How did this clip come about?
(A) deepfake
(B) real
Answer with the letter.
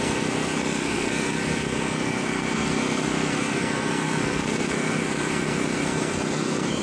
A